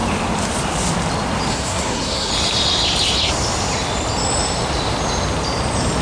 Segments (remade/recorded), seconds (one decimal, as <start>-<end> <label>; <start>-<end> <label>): 0.0-1.5 recorded; 1.5-2.3 remade; 2.3-6.0 recorded